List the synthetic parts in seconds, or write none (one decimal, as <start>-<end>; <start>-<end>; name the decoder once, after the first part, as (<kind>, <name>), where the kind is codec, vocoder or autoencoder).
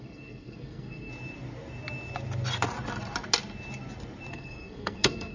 0.0-1.1 (codec, SNAC); 4.3-5.3